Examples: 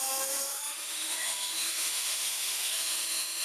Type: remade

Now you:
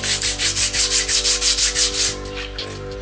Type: recorded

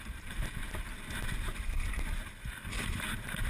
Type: recorded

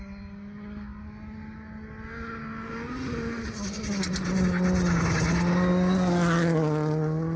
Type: recorded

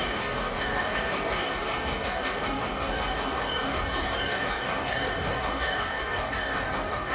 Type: remade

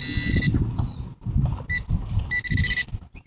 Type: recorded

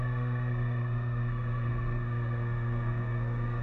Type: remade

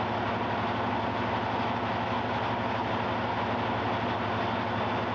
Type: recorded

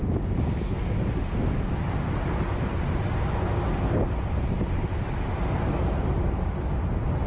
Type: recorded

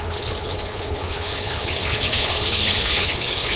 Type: remade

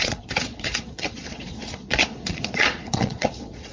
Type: remade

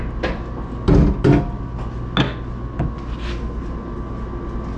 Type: recorded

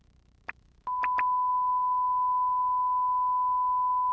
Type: recorded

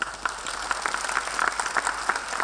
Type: recorded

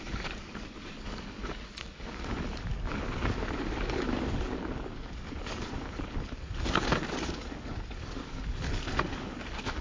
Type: remade